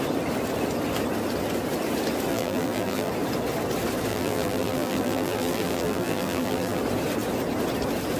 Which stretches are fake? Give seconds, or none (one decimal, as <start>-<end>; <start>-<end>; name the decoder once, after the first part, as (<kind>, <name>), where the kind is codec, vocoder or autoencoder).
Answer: 2.3-3.1 (vocoder, BigVGAN v2); 4.1-6.8